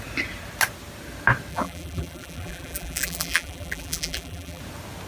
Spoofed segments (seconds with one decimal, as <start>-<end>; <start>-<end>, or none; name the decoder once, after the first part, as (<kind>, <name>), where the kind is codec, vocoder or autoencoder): 1.5-4.6 (vocoder, BigVGAN v2)